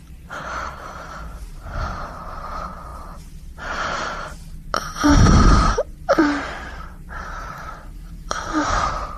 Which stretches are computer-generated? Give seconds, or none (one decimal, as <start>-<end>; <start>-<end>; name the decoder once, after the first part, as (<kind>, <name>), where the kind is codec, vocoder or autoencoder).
0.0-9.2 (vocoder, BigVGAN v2)

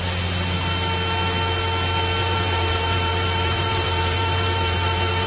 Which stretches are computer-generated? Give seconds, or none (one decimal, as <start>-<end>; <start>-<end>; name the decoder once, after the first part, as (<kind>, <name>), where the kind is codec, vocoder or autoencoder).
2.2-5.3 (vocoder, BigVGAN v2)

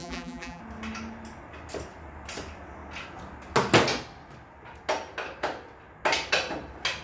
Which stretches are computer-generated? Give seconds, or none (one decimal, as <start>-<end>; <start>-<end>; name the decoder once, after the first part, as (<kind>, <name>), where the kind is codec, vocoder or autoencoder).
0.0-0.6 (vocoder, BigVGAN v2)

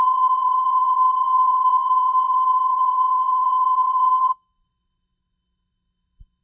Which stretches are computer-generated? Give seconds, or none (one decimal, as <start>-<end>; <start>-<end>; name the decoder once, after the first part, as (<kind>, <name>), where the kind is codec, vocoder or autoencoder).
0.0-6.4 (codec, HILCodec)

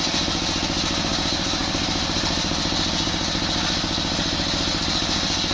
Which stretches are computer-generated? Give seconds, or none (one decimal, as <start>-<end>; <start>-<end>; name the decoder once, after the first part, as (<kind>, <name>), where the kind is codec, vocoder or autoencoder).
none

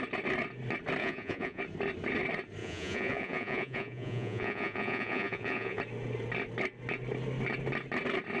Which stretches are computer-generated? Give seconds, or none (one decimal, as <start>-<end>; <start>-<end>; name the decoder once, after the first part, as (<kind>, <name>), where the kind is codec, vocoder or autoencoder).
1.0-1.6 (vocoder, Vocos); 2.6-5.8